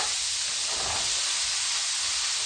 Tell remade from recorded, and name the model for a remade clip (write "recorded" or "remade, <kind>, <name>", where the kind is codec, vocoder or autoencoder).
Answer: recorded